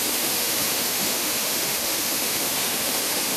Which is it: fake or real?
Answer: fake